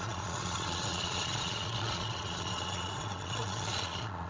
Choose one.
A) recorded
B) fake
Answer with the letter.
B